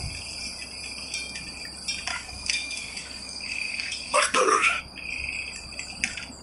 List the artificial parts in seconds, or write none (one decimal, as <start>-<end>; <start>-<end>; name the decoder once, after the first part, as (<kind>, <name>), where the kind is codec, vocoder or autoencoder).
2.1-4.8 (codec, DAC)